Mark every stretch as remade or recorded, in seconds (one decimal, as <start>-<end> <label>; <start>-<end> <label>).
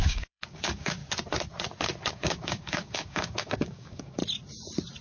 0.0-1.0 remade; 1.0-2.1 recorded; 2.1-4.2 remade; 4.2-5.0 recorded